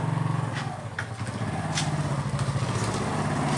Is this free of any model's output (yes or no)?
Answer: yes